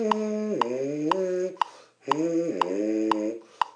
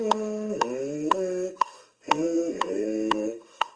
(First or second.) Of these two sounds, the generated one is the second